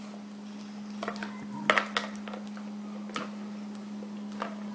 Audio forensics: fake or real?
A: real